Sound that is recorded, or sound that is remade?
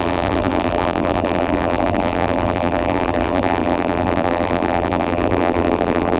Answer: remade